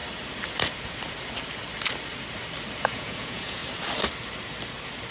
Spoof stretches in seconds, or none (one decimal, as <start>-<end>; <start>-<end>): 2.8-3.6